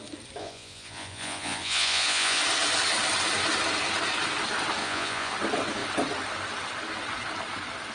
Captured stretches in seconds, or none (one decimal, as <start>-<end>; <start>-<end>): 0.0-0.4; 2.4-4.8; 5.3-7.9